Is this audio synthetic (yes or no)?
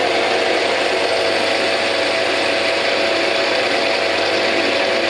no